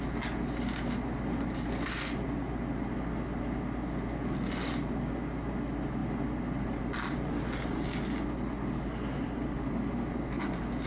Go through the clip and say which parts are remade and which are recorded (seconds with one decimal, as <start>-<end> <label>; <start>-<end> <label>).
0.0-10.9 recorded